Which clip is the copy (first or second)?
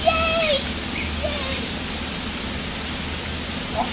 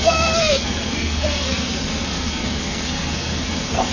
second